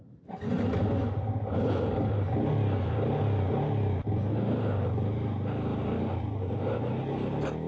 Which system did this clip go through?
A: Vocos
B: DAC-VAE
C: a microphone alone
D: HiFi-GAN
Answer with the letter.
C